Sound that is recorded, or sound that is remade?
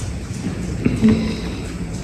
recorded